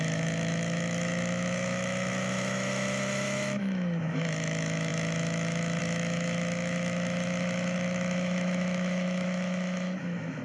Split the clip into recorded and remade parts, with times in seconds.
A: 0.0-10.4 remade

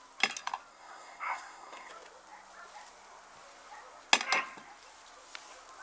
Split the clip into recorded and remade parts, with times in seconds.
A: 0.0-0.7 recorded; 0.7-1.9 remade; 1.9-5.8 recorded

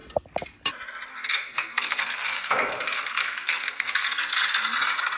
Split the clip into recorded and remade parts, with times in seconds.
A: 0.0-1.1 recorded; 1.1-4.2 remade; 4.2-5.2 recorded

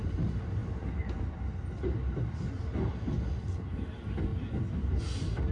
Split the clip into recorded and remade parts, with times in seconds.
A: 0.0-5.5 recorded

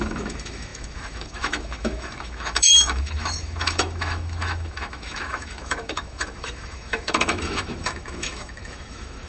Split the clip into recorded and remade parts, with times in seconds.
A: 0.0-9.3 remade